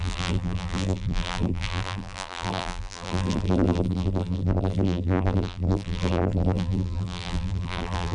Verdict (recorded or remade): remade